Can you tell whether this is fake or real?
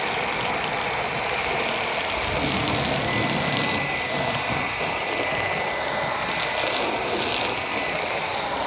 real